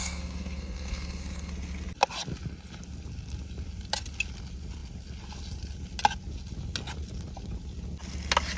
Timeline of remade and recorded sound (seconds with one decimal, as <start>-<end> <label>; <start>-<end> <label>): 0.0-1.5 remade; 1.5-8.6 recorded